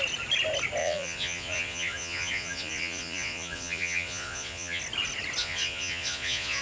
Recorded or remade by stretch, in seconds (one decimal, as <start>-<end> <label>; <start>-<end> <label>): 0.0-0.8 recorded; 0.8-4.8 remade; 4.8-5.4 recorded; 5.4-6.6 remade